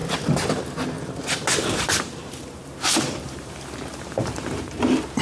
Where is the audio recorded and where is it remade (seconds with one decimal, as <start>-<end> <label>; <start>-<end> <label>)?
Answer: 0.0-2.0 recorded; 2.0-5.2 remade